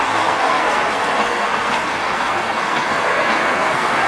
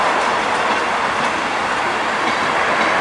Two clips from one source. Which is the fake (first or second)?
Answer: first